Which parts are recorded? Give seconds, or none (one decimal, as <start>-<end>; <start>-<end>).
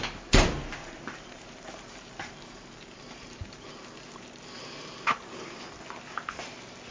0.0-0.6; 3.7-6.9